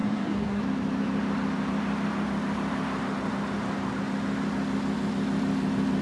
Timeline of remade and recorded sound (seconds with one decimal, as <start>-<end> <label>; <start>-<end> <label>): 0.0-0.6 remade; 0.6-6.0 recorded